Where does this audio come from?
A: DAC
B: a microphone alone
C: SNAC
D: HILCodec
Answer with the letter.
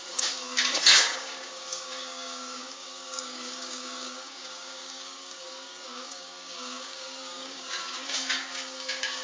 A